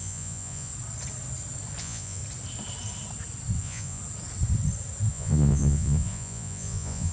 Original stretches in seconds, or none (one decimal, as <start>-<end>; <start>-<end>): 0.7-1.8; 2.2-3.6; 4.0-5.1